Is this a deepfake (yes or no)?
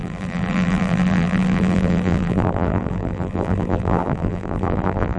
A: yes